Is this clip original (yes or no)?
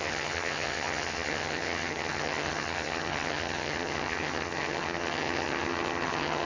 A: no